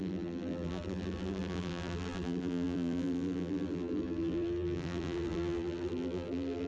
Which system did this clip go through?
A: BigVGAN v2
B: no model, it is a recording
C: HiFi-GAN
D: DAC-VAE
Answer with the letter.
A